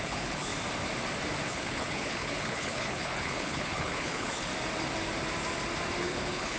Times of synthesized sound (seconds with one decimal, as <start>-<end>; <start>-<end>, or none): 0.0-0.5; 1.5-4.5; 6.0-6.6